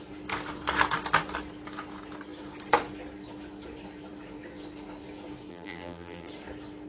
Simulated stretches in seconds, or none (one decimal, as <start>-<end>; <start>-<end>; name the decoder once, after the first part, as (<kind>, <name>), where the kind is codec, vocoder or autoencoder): 5.5-6.3 (vocoder, BigVGAN v2)